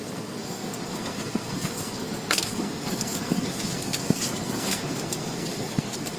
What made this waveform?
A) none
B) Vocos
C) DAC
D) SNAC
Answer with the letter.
D